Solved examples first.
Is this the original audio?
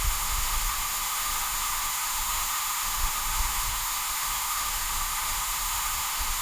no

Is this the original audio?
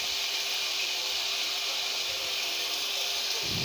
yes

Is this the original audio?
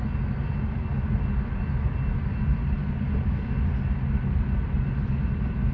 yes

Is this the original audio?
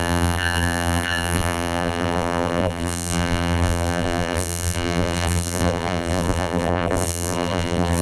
no